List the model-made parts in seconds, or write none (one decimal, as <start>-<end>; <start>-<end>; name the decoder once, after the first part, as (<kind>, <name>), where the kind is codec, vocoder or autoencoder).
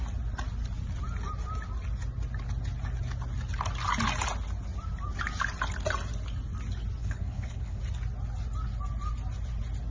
7.0-7.8 (codec, HILCodec)